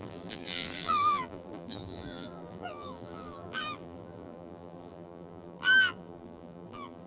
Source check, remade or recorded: remade